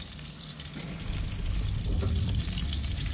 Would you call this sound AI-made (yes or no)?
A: no